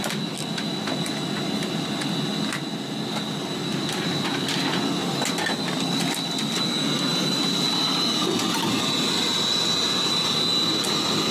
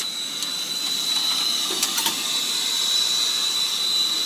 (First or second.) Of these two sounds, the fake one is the second